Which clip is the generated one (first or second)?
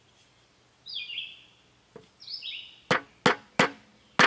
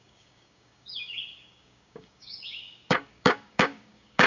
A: second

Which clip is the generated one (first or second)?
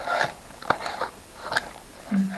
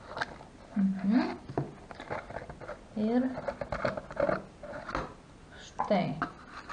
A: first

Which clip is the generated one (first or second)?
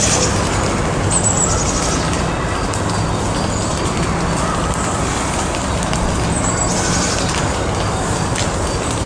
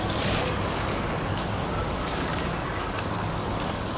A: second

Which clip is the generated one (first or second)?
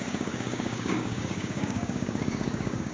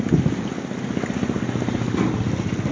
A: first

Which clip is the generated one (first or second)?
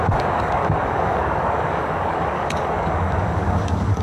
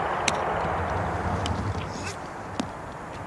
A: first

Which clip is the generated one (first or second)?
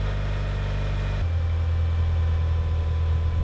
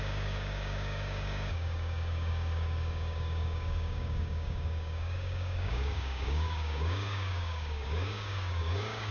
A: second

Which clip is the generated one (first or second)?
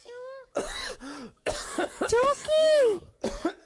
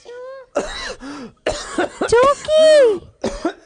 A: first